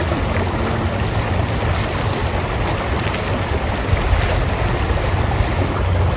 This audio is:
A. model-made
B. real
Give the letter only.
B